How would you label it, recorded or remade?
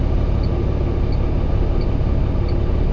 recorded